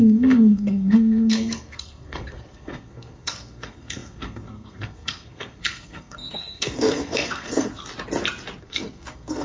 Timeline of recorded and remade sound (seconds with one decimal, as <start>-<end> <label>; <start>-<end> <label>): 0.0-7.8 remade; 7.8-8.6 recorded; 8.6-9.4 remade